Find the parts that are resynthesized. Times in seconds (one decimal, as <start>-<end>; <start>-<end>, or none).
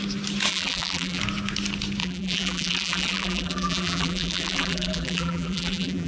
0.5-1.2; 2.0-6.1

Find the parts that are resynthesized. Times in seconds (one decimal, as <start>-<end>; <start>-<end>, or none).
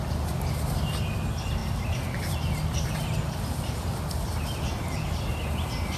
none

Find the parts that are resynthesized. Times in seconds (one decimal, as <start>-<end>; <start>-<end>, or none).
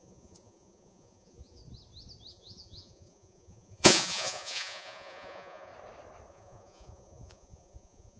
0.0-1.6; 2.3-5.7; 6.3-8.2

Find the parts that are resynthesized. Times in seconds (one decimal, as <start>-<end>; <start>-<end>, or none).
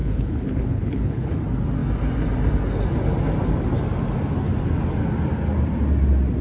0.0-1.4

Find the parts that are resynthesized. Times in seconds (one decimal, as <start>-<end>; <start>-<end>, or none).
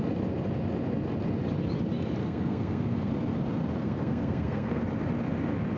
2.2-3.1; 3.8-4.8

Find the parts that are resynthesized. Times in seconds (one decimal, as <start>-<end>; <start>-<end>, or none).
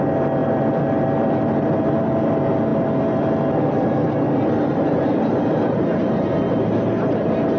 0.4-2.0; 2.7-7.6